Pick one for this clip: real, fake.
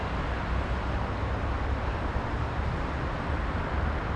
real